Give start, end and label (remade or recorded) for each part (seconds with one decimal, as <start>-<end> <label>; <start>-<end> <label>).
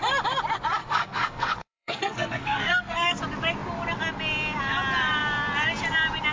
0.0-0.8 recorded; 0.8-3.2 remade; 3.2-6.3 recorded